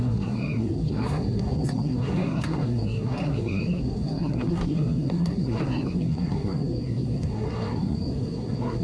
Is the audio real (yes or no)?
no